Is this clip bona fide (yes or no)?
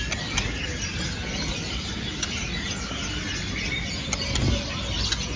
yes